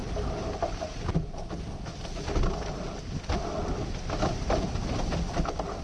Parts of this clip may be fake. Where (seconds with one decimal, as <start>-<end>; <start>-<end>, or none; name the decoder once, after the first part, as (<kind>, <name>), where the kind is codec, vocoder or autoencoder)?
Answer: none